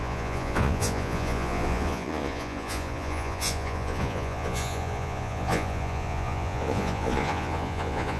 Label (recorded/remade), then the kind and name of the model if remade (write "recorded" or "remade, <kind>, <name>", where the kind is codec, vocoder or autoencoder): remade, vocoder, Vocos